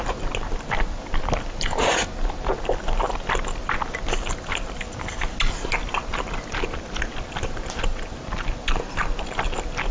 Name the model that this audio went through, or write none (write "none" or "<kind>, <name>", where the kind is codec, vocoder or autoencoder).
none